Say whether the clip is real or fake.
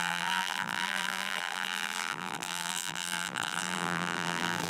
fake